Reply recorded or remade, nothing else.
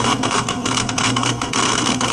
remade